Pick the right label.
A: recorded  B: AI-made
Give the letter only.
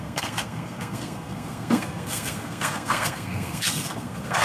B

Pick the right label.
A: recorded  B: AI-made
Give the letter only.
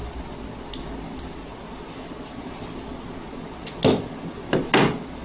A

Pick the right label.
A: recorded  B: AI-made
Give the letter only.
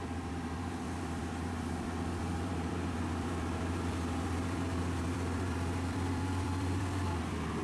B